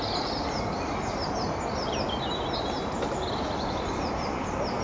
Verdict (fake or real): real